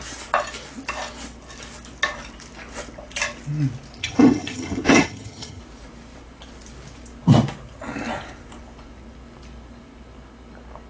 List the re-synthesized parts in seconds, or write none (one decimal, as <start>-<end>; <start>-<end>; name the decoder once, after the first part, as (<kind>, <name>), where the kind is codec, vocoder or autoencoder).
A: 4.0-5.6 (vocoder, HiFi-GAN)